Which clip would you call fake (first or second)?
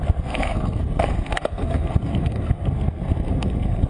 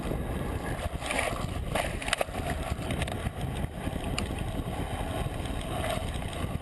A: first